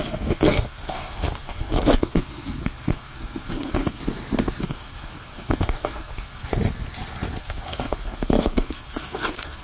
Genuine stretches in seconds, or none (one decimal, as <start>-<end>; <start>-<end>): 4.0-4.6; 6.5-7.4